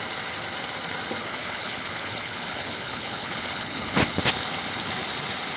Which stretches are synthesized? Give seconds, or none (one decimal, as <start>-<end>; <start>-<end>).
1.2-4.2